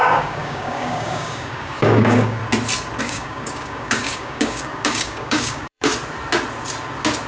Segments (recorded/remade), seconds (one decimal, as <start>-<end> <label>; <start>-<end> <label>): 0.0-2.4 remade; 2.4-3.0 recorded; 3.0-5.9 remade; 5.9-7.3 recorded